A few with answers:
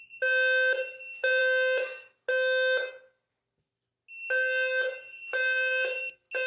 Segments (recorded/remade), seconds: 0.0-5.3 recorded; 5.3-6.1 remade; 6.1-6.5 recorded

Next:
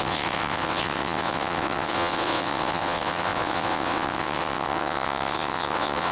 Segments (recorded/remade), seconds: 0.0-6.1 remade

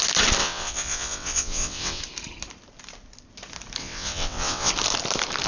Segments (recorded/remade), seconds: 0.0-0.4 recorded; 0.4-2.0 remade; 2.0-3.8 recorded; 3.8-4.7 remade; 4.7-5.5 recorded

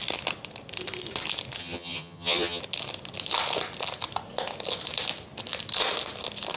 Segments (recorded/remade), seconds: 0.0-1.6 recorded; 1.6-2.6 remade; 2.6-6.6 recorded

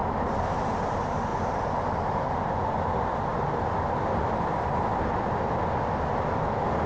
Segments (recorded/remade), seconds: 0.0-0.7 remade; 0.7-6.9 recorded

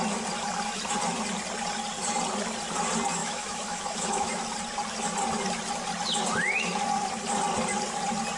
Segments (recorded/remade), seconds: 0.0-3.2 recorded; 3.2-4.3 remade; 4.3-8.4 recorded

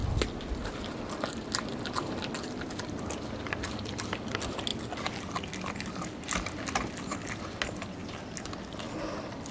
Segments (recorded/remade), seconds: 0.0-9.5 recorded

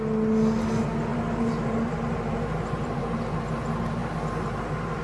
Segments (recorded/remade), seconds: 0.0-1.1 recorded; 1.1-3.0 remade; 3.0-5.0 recorded